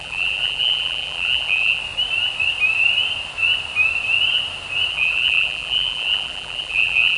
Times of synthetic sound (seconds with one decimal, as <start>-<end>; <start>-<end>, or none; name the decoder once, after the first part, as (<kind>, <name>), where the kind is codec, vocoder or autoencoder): 0.0-1.8 (vocoder, BigVGAN v2); 4.9-7.2